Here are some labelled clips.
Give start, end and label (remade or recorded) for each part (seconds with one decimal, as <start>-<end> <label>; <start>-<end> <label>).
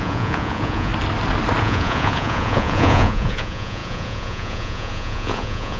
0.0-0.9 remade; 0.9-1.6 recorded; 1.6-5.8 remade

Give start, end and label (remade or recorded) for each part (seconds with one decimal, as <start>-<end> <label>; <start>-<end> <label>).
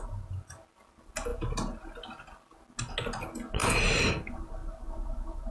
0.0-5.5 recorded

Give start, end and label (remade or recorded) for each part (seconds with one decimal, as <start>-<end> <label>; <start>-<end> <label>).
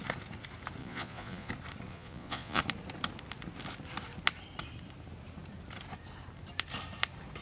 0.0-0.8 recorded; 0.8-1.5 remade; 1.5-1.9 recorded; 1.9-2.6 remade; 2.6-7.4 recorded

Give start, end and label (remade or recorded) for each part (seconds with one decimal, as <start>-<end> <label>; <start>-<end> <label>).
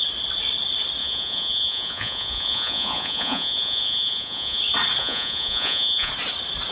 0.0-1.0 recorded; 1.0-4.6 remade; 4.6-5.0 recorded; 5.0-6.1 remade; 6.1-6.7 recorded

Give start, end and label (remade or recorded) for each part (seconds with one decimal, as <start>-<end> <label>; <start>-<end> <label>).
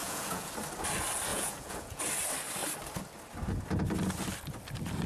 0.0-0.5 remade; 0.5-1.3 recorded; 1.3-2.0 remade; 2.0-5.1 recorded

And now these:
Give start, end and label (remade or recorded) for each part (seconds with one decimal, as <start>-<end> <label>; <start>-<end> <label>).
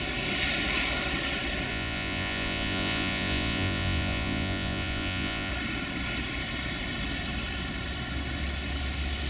0.0-1.7 recorded; 1.7-5.5 remade; 5.5-9.3 recorded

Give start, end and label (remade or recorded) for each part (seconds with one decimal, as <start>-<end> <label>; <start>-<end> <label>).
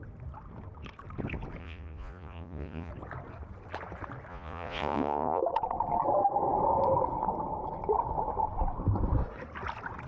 0.0-1.6 recorded; 1.6-2.9 remade; 2.9-4.3 recorded; 4.3-5.4 remade; 5.4-10.1 recorded